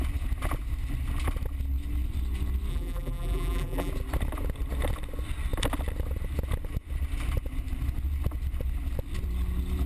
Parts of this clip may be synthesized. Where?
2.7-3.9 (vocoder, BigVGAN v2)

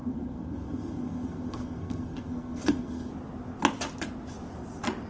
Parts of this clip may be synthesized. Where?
0.0-3.1 (codec, SNAC)